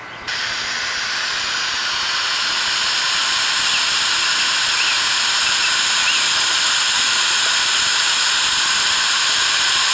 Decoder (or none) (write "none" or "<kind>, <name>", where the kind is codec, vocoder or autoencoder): none